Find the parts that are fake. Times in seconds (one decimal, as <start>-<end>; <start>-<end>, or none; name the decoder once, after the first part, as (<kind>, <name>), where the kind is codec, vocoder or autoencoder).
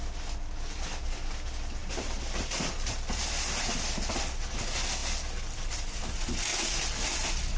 1.8-4.1 (vocoder, BigVGAN v2)